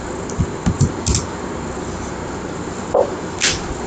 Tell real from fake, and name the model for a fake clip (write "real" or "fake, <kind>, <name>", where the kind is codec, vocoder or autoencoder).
real